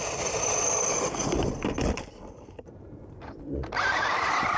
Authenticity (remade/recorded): remade